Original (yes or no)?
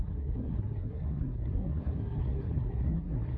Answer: no